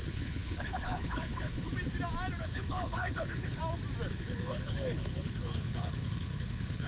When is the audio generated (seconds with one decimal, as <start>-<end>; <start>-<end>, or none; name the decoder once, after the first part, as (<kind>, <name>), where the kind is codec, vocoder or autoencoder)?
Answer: 0.0-1.7 (codec, HILCodec); 2.4-3.6; 4.1-6.9